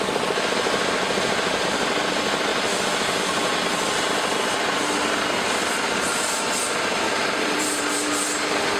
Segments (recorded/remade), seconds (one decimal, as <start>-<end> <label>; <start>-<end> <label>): 0.0-7.2 recorded; 7.2-8.2 remade; 8.2-8.8 recorded